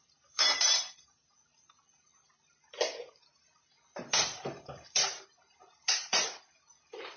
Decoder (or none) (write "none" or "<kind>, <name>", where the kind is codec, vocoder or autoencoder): vocoder, BigVGAN v2